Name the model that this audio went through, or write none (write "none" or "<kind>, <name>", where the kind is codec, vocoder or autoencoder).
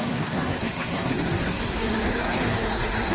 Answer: codec, SNAC